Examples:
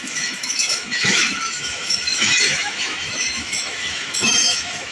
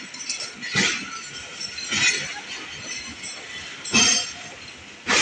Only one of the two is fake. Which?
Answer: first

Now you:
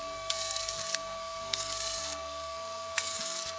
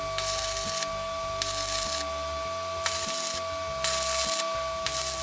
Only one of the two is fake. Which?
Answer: first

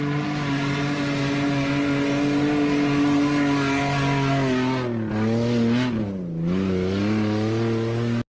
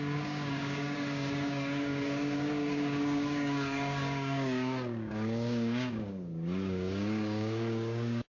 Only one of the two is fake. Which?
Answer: second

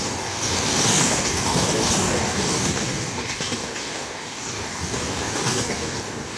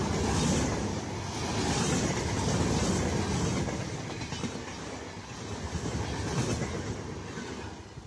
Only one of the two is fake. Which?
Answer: first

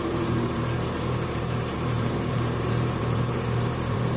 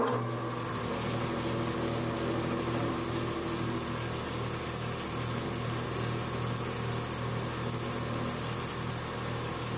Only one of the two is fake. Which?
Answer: first